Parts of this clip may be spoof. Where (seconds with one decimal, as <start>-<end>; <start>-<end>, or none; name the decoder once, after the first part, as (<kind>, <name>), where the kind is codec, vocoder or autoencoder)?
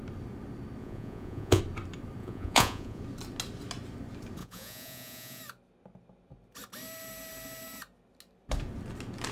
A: 0.8-1.6 (vocoder, Vocos); 2.2-3.0; 4.4-5.4